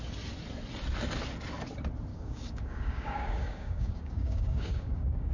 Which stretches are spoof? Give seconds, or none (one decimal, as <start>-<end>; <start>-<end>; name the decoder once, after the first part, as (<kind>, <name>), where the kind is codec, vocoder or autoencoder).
2.1-5.3 (codec, DAC)